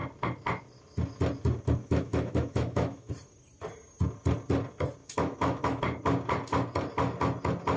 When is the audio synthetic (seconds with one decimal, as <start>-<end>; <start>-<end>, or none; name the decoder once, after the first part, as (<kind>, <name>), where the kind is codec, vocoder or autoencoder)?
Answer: 1.8-3.1 (autoencoder, DAC-VAE); 5.0-5.8